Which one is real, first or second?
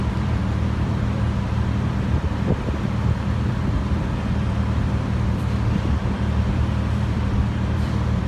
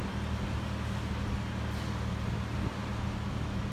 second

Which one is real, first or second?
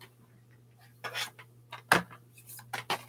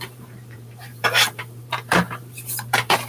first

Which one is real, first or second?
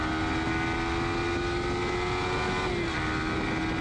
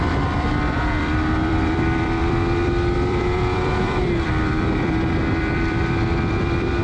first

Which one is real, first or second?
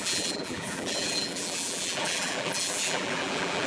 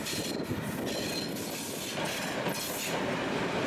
second